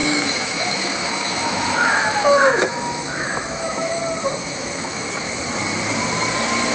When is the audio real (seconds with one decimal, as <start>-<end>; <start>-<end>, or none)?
4.0-4.4; 5.3-6.7